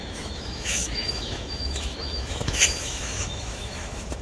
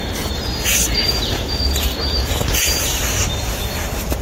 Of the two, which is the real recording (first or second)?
second